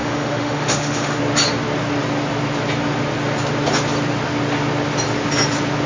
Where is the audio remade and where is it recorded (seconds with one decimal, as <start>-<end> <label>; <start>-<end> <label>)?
0.0-1.2 remade; 1.2-5.9 recorded